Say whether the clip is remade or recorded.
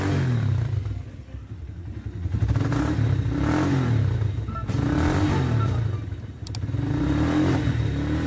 recorded